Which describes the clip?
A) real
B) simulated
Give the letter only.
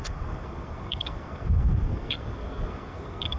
B